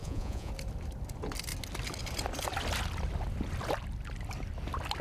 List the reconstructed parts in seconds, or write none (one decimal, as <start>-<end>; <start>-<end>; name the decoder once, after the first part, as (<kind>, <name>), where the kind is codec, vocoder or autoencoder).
0.0-0.5 (vocoder, Vocos)